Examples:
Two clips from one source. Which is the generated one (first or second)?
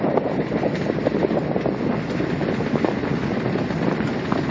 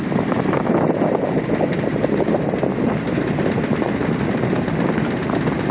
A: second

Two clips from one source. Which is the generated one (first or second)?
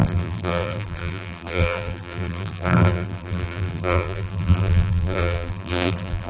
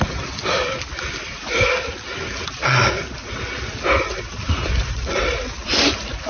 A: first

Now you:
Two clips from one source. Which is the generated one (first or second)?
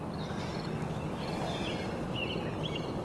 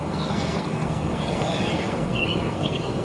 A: second